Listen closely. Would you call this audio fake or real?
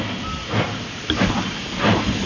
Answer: real